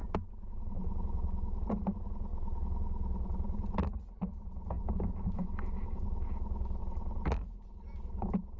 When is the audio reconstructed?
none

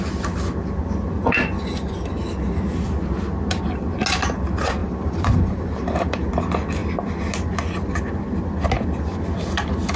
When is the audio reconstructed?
4.8-6.3

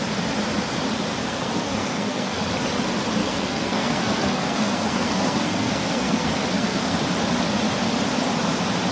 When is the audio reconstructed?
1.2-2.5; 3.2-7.0

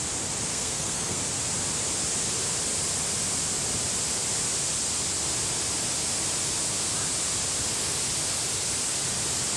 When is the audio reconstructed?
0.5-1.2

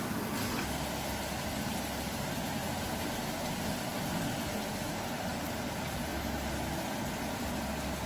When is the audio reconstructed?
none

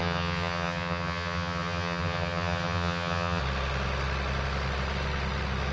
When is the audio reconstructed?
0.0-3.4